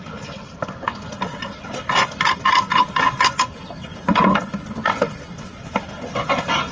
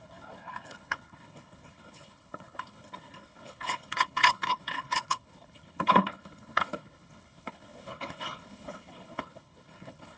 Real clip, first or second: first